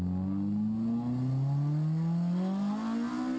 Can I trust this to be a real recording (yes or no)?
yes